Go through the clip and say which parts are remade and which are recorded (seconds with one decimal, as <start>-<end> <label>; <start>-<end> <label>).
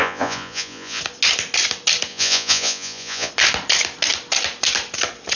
0.0-1.0 remade; 1.0-2.1 recorded; 2.1-3.3 remade; 3.3-5.4 recorded